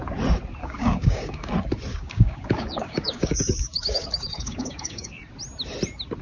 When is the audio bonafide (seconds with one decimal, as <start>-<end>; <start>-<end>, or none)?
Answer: 0.0-0.6; 1.5-1.9; 5.2-6.2